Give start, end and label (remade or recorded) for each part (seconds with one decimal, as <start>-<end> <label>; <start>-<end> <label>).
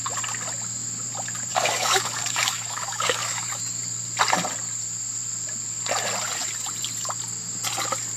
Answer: 0.0-1.5 recorded; 1.5-3.6 remade; 3.6-8.2 recorded